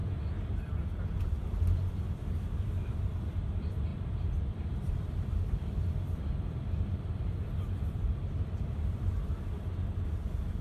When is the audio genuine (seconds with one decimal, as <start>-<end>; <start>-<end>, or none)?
0.0-2.0

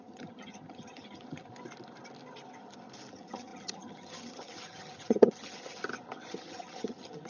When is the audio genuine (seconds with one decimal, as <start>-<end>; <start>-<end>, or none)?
1.5-3.1; 5.8-6.3

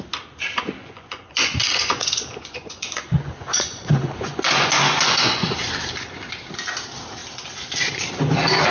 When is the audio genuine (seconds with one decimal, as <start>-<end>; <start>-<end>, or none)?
0.0-0.8; 5.5-8.7

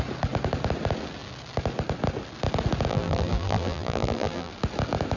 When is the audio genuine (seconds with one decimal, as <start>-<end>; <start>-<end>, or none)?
0.0-2.9; 4.5-5.2

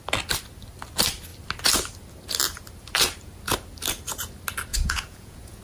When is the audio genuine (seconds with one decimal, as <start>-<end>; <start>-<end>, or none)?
0.0-4.7

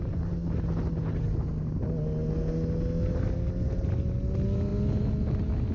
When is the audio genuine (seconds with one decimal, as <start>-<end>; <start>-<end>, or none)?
0.0-5.7

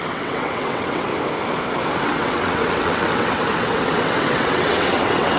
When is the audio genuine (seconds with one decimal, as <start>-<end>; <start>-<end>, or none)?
1.1-2.0

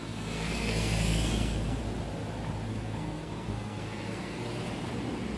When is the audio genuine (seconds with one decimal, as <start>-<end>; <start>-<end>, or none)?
1.8-2.7; 4.4-5.4